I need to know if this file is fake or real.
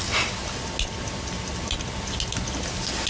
real